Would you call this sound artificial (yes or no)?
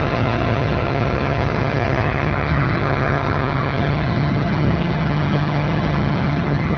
yes